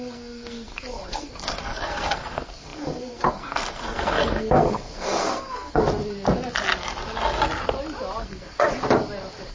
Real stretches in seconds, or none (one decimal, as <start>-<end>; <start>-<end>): 5.8-8.2; 8.7-9.5